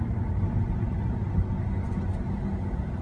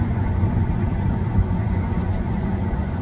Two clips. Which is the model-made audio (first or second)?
second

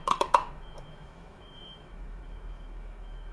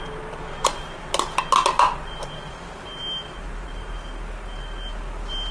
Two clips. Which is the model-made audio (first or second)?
first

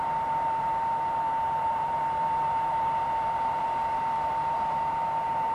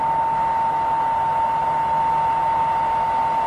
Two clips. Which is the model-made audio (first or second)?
first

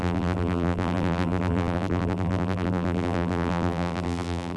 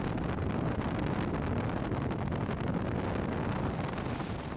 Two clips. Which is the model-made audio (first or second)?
first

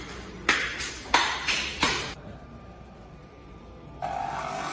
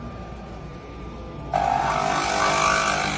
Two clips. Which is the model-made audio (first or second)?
first